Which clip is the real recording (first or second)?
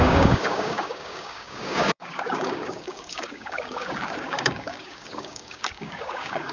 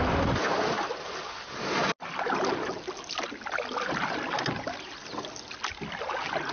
second